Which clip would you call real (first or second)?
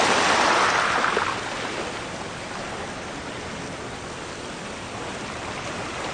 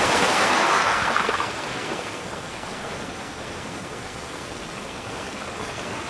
first